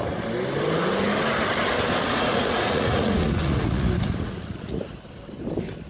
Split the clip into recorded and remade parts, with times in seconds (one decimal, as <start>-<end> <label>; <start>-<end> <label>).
0.0-2.0 recorded; 2.0-5.0 remade; 5.0-5.9 recorded

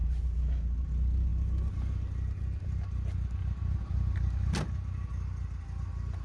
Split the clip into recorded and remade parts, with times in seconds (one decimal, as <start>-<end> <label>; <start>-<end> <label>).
0.0-6.2 recorded

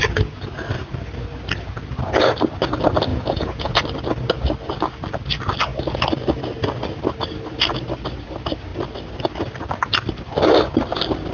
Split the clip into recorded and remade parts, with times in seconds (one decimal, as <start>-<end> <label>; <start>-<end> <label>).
0.0-3.1 recorded; 3.1-3.8 remade; 3.8-11.3 recorded

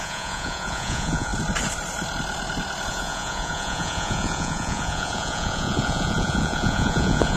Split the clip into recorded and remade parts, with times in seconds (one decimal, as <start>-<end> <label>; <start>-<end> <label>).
0.0-1.3 remade; 1.3-2.9 recorded; 2.9-7.4 remade